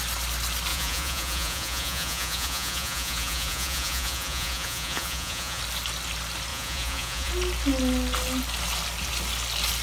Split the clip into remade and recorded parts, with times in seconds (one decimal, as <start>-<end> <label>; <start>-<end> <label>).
0.0-0.7 recorded; 0.7-5.6 remade; 5.6-6.5 recorded; 6.5-7.3 remade; 7.3-9.8 recorded